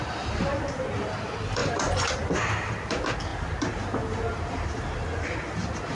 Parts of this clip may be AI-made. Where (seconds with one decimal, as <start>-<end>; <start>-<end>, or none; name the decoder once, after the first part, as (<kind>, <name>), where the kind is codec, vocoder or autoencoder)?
1.6-2.1 (vocoder, Vocos)